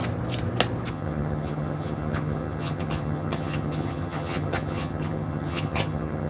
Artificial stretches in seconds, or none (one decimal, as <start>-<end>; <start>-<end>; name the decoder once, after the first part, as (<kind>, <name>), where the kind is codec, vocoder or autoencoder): 0.9-6.3 (vocoder, HiFi-GAN)